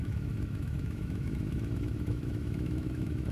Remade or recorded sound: remade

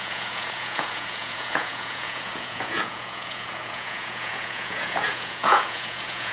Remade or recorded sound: remade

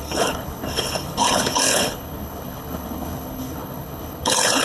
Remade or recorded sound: remade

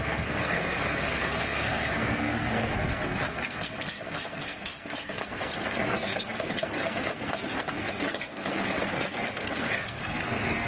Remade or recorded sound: remade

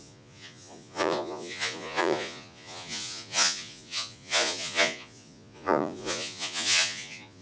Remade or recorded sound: remade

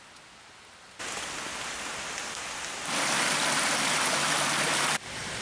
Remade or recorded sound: recorded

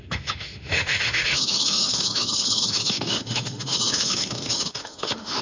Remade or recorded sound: remade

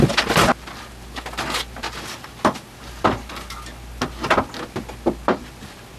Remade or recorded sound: recorded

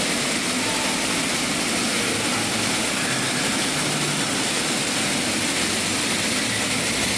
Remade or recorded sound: recorded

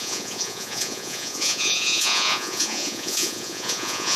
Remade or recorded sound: remade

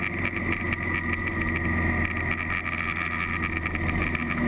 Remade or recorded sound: recorded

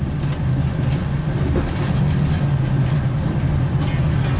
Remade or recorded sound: recorded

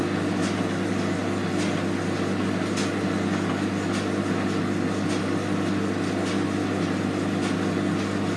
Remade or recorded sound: recorded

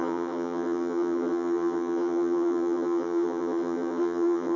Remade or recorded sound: remade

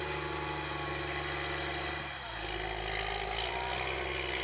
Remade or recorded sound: recorded